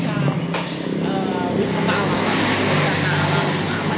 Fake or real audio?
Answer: real